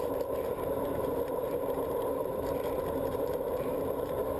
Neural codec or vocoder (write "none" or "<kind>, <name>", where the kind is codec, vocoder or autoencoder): vocoder, BigVGAN v2